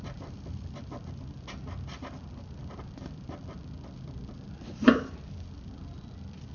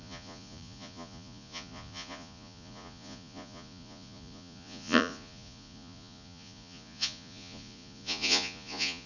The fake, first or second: second